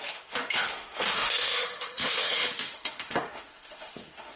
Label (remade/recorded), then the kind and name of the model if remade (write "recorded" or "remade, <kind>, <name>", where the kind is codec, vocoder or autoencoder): remade, autoencoder, DAC-VAE